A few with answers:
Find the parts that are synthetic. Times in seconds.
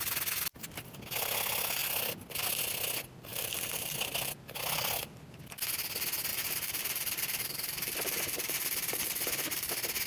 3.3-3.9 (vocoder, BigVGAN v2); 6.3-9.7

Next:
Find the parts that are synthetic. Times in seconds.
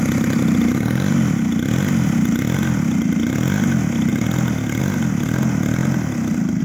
none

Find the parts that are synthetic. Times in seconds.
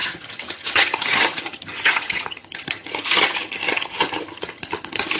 0.0-5.2 (vocoder, HiFi-GAN)